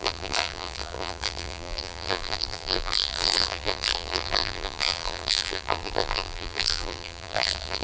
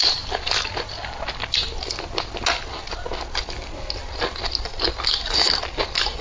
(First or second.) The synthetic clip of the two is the first